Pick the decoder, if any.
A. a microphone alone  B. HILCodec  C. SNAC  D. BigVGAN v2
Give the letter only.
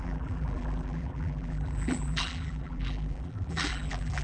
D